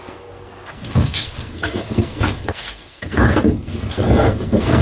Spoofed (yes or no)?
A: yes